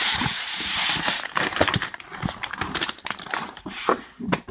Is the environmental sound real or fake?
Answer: fake